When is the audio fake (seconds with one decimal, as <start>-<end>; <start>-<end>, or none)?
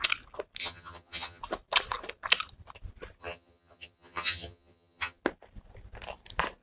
0.6-1.4; 3.2-5.2